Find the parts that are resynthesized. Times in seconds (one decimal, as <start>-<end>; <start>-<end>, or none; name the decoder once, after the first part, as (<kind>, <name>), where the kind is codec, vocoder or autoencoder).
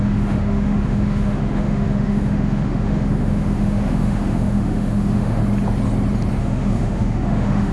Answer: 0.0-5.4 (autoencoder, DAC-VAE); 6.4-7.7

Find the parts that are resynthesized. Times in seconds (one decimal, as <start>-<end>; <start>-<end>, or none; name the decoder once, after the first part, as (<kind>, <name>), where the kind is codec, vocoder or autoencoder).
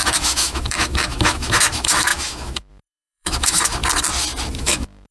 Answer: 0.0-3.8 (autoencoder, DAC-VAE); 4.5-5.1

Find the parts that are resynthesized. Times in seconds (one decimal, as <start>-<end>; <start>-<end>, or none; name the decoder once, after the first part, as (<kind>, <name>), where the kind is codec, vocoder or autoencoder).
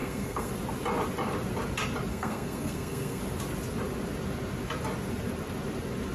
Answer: 0.0-0.5 (codec, SNAC); 2.1-3.2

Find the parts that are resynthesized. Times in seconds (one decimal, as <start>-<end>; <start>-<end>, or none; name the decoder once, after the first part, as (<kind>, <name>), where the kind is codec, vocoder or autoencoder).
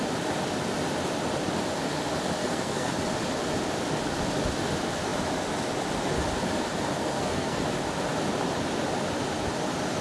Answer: 2.4-2.9 (codec, SNAC); 6.9-7.6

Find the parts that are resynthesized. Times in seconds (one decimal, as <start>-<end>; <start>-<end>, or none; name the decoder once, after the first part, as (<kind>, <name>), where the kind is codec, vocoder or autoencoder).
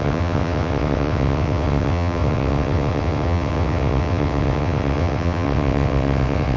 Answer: 0.0-6.6 (vocoder, WaveNeXt)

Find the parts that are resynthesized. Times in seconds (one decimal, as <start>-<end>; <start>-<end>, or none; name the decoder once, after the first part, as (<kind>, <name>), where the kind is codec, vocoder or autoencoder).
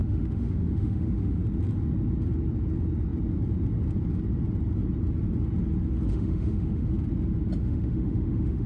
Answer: 0.0-1.4 (autoencoder, DAC-VAE); 6.1-6.9; 7.6-8.7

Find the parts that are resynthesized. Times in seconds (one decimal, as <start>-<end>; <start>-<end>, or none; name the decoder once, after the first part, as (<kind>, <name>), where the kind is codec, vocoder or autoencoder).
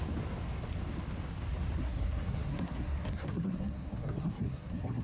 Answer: 1.8-5.0 (codec, SNAC)